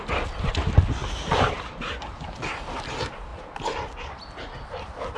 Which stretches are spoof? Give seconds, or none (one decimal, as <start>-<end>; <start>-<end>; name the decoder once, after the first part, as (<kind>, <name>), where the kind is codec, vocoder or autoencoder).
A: none